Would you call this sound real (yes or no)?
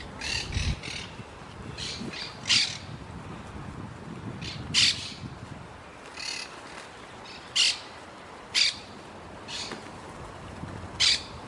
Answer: yes